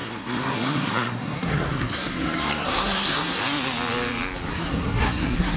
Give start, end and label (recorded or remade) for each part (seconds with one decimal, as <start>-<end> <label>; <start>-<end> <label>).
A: 0.0-3.4 remade; 3.4-4.5 recorded; 4.5-5.6 remade